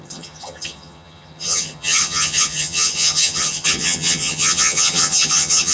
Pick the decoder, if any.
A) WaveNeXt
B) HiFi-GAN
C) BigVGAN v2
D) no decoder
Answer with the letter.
B